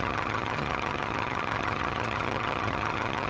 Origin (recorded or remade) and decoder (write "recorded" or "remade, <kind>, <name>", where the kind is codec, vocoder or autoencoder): remade, vocoder, HiFi-GAN